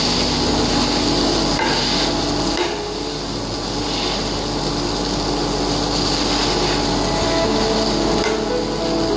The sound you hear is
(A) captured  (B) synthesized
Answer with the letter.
A